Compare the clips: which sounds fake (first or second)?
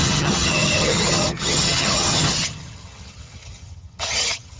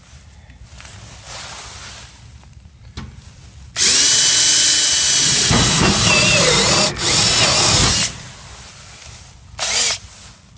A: first